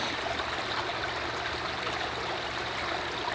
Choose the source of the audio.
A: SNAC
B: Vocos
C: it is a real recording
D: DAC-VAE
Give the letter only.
C